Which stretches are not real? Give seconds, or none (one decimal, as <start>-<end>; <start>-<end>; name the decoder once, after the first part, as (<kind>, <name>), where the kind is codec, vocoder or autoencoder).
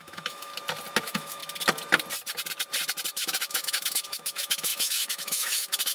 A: 0.0-0.5 (autoencoder, DAC-VAE); 1.0-1.4; 3.1-5.9